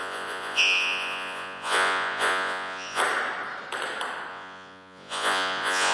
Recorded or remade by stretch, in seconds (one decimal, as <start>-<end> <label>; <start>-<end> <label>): 0.0-3.0 remade; 3.0-4.3 recorded; 4.3-5.9 remade